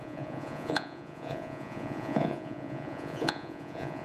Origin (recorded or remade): remade